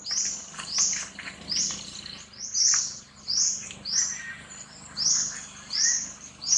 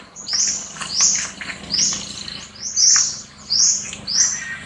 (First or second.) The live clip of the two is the second